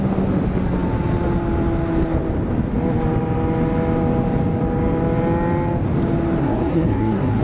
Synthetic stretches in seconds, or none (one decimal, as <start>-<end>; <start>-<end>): 6.4-7.4

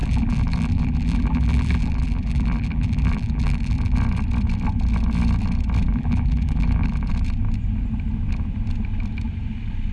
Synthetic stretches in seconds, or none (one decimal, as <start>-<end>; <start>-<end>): 0.0-4.0; 5.9-7.1

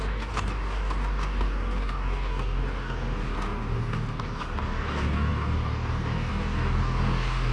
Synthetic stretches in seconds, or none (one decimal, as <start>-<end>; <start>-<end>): 0.0-7.5

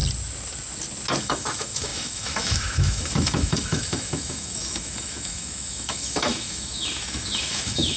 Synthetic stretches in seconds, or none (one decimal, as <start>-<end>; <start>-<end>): 1.2-8.0

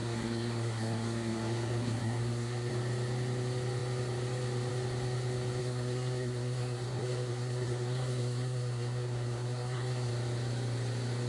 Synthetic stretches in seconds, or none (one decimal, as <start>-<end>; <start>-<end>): 0.0-2.7; 5.6-10.1

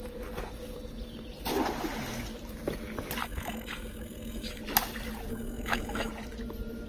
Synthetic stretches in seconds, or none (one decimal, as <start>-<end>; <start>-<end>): 3.2-4.6; 5.3-6.1

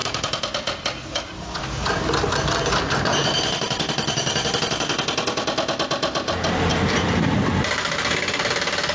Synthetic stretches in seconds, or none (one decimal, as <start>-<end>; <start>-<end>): 0.0-1.6; 3.2-4.6; 6.7-7.5

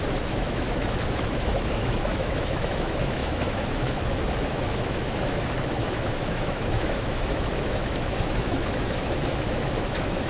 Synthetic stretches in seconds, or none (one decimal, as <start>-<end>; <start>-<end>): 0.0-10.3